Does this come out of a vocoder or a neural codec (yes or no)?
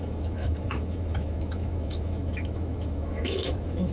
yes